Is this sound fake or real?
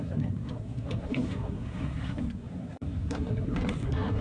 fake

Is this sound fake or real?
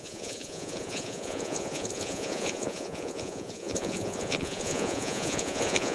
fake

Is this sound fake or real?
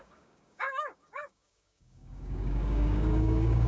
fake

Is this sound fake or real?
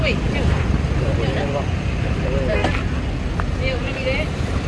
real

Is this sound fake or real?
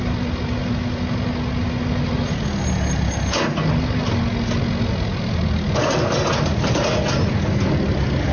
real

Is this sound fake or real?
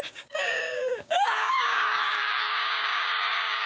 fake